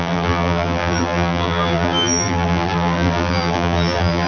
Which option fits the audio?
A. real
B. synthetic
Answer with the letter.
B